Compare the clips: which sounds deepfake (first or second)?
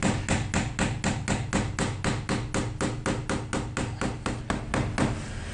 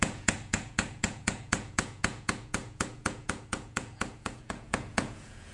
second